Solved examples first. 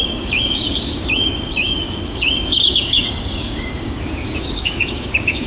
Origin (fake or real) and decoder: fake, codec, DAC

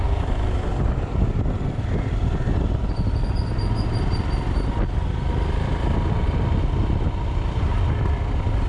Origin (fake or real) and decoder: real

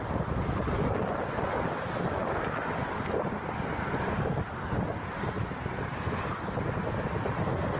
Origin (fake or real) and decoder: real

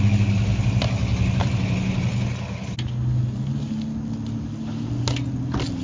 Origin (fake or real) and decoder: real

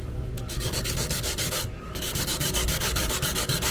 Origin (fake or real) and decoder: fake, codec, DAC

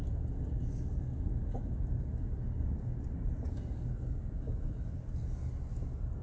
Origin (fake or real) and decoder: real